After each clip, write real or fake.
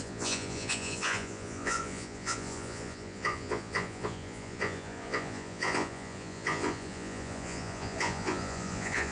fake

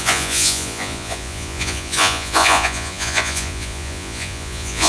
fake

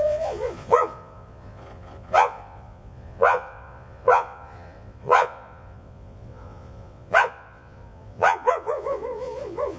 fake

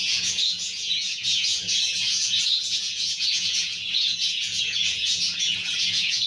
fake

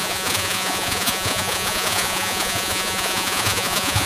fake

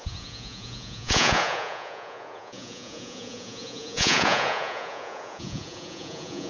fake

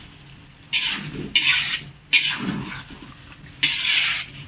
real